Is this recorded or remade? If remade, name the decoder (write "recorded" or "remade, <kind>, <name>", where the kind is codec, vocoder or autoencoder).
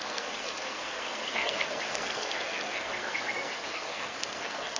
remade, codec, SNAC